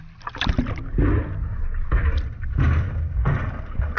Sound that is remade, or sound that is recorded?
recorded